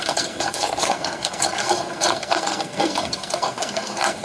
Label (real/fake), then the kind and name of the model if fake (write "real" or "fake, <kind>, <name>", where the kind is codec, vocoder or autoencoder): fake, codec, SNAC